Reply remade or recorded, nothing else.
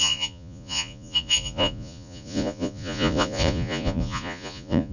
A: remade